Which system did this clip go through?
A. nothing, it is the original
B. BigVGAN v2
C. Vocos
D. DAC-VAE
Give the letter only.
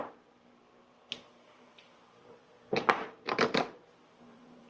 B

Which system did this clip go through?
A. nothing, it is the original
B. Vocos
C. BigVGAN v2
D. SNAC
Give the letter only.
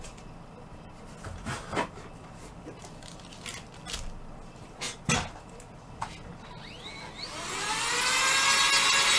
A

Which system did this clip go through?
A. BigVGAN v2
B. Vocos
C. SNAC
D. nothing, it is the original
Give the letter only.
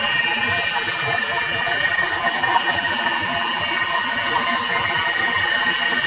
A